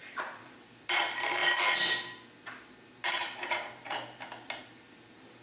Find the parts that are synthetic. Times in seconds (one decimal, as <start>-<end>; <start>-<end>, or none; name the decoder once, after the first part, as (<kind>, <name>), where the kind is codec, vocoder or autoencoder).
0.0-1.0 (vocoder, BigVGAN v2)